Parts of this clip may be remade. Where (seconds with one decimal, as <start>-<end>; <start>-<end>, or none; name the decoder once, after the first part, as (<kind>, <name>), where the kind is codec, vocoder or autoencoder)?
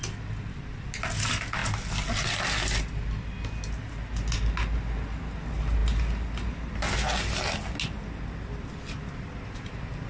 none